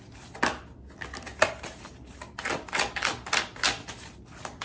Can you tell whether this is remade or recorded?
recorded